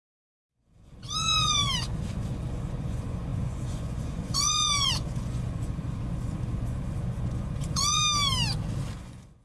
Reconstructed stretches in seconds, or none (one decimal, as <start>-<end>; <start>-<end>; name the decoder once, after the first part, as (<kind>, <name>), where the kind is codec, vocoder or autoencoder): 0.0-8.0 (vocoder, Vocos); 9.0-9.4